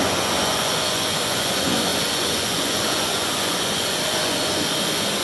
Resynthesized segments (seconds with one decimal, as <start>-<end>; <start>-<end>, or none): 0.0-5.2